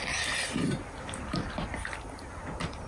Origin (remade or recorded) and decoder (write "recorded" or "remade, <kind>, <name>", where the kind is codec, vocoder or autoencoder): recorded